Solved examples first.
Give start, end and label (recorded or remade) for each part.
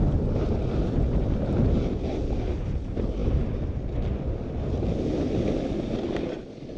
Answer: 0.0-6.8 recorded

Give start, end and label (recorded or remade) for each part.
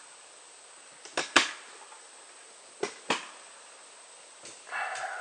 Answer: 0.0-5.2 recorded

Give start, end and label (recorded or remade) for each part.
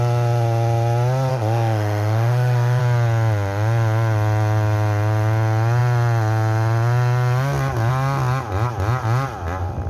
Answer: 0.0-1.3 recorded; 1.3-2.8 remade; 2.8-9.9 recorded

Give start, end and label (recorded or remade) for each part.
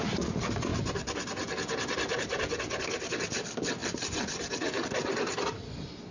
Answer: 0.0-3.8 recorded; 3.8-4.4 remade; 4.4-6.1 recorded